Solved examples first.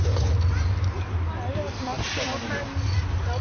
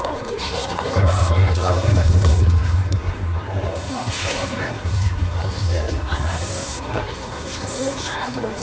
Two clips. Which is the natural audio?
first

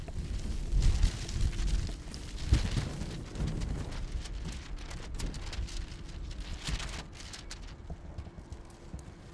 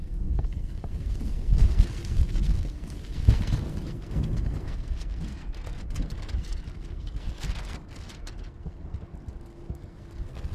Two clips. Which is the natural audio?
first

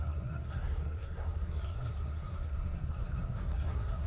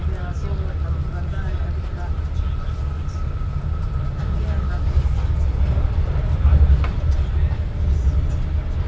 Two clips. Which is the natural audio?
second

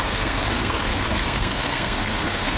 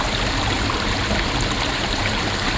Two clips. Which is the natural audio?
second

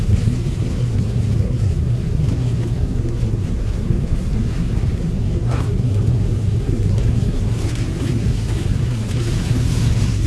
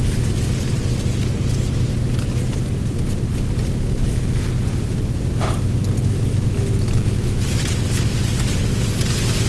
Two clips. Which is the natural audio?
second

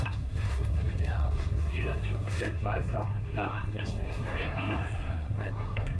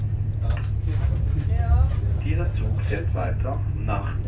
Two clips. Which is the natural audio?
second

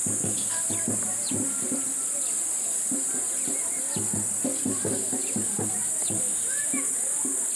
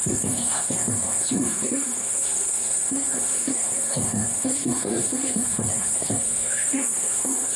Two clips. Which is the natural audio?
first